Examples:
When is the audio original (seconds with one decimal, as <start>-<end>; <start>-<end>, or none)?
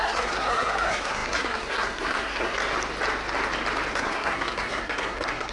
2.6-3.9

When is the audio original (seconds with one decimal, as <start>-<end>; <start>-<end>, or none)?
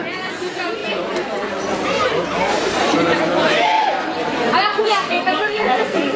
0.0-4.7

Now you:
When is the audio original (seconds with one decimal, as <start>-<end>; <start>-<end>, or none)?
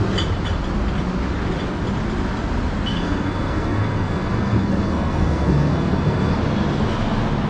0.0-2.9; 6.4-7.5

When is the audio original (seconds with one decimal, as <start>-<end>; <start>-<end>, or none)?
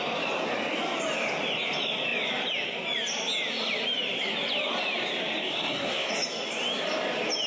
0.0-5.4; 6.1-7.5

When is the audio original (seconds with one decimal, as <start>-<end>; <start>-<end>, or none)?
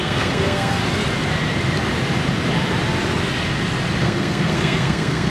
0.8-4.0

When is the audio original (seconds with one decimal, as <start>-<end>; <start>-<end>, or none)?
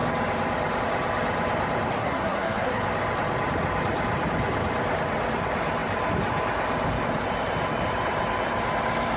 0.0-1.9; 2.8-9.2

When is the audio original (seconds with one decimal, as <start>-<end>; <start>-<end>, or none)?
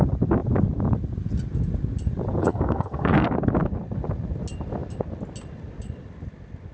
0.0-2.4; 3.3-6.7